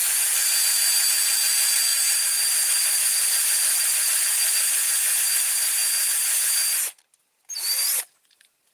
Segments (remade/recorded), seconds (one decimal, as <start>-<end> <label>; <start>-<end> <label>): 0.0-5.8 remade; 5.8-7.2 recorded; 7.2-8.7 remade